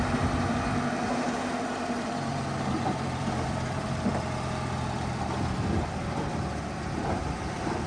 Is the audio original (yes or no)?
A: no